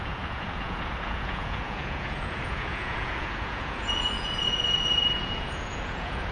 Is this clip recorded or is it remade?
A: remade